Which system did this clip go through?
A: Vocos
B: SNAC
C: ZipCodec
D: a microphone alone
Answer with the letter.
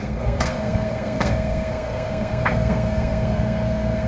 B